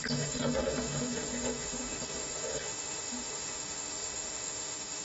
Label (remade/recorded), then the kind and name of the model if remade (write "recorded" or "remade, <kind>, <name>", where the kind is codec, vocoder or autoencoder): remade, autoencoder, DAC-VAE